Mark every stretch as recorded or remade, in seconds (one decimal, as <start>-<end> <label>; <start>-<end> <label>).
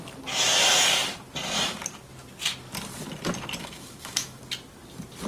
0.0-3.6 recorded; 3.6-4.4 remade; 4.4-5.3 recorded